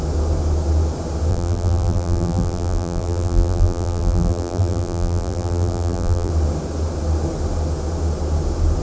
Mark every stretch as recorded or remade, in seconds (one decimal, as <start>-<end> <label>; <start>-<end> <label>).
0.0-1.3 recorded; 1.3-6.3 remade; 6.3-8.8 recorded